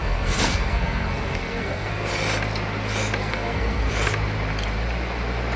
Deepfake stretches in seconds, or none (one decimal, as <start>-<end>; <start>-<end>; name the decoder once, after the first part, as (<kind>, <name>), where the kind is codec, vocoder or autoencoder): 0.0-2.1 (codec, SNAC); 3.2-3.9